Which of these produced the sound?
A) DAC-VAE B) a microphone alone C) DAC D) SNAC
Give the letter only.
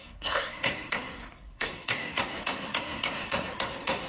D